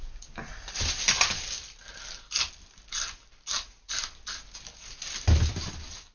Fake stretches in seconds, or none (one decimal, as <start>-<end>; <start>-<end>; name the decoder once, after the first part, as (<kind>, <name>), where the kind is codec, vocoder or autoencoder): none